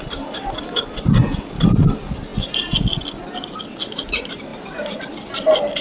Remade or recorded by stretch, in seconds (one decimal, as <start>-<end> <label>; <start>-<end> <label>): 0.0-5.8 recorded

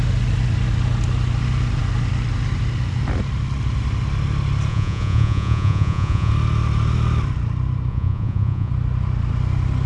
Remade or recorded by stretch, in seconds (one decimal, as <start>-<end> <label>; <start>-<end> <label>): 0.0-4.7 recorded; 4.7-6.3 remade; 6.3-7.9 recorded; 7.9-8.7 remade; 8.7-9.9 recorded